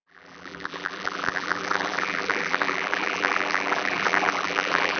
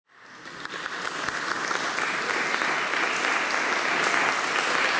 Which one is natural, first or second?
second